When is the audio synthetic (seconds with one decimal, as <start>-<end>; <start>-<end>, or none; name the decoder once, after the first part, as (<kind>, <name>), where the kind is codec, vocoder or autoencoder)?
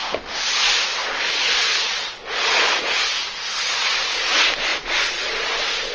1.0-3.9 (vocoder, Vocos); 4.7-5.3